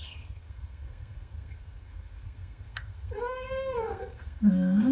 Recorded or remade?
remade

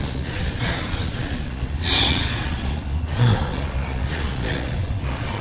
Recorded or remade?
remade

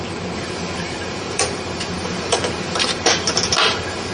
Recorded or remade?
remade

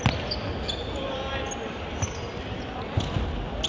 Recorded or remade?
recorded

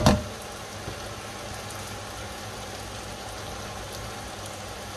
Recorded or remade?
recorded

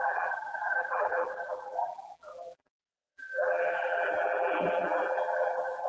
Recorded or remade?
remade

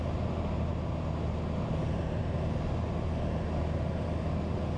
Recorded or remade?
recorded